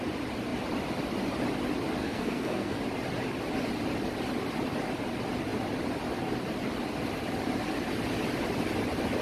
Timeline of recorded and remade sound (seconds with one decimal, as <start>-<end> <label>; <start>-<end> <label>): 0.0-2.0 recorded; 2.0-2.8 remade; 2.8-9.2 recorded